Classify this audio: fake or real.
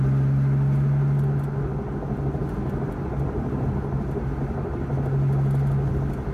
real